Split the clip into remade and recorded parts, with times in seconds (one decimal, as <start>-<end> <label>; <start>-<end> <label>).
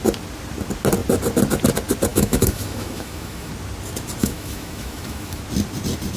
0.0-2.1 recorded; 2.1-3.5 remade; 3.5-4.2 recorded; 4.2-5.4 remade; 5.4-6.2 recorded